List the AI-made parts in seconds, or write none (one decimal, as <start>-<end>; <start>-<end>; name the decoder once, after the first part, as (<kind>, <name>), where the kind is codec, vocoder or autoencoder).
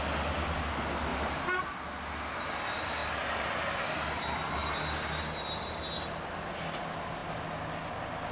1.1-1.6 (vocoder, BigVGAN v2); 3.0-3.8